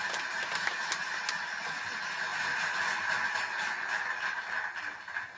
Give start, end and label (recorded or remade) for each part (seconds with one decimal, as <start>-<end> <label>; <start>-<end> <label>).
0.0-5.4 recorded